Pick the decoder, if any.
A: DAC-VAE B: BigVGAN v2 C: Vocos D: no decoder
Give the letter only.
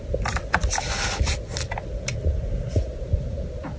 D